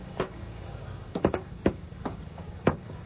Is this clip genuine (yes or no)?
no